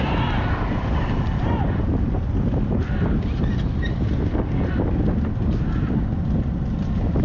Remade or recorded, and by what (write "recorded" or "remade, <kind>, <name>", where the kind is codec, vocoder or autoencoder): recorded